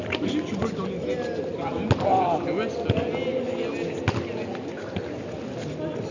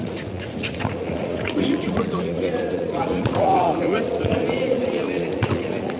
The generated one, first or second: second